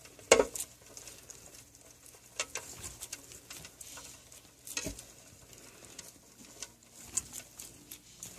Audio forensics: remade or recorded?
recorded